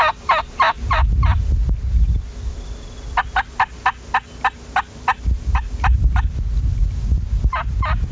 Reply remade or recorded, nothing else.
recorded